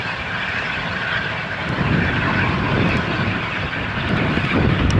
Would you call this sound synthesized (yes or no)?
no